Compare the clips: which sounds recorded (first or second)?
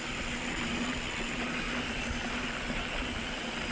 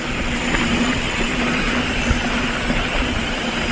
first